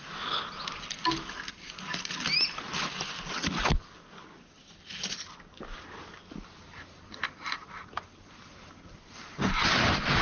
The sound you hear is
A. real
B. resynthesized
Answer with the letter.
A